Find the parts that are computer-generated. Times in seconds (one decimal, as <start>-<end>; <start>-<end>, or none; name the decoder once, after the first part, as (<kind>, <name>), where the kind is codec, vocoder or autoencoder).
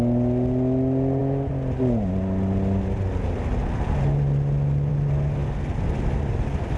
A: none